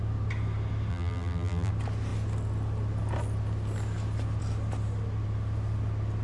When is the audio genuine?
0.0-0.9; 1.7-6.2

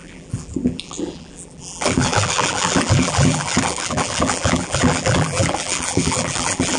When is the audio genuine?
none

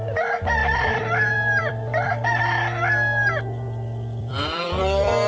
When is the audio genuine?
0.0-0.6; 2.4-4.2

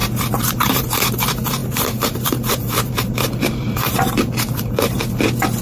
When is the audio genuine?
5.0-5.6

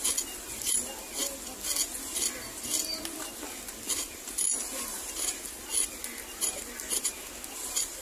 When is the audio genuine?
0.0-8.0

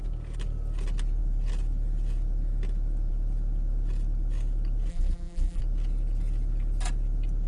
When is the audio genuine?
0.0-4.9; 5.6-7.5

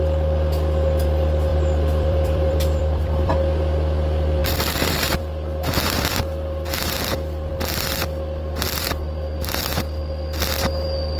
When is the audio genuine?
0.0-1.5; 3.3-11.2